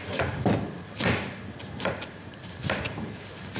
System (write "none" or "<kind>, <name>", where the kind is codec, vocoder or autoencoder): vocoder, BigVGAN v2